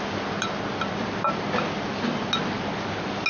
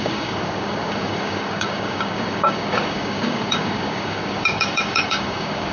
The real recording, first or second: first